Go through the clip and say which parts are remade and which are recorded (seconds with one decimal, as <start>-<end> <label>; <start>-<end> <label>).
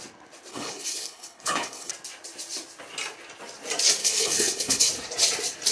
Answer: 0.0-0.5 recorded; 0.5-1.9 remade; 1.9-4.0 recorded; 4.0-4.9 remade; 4.9-5.7 recorded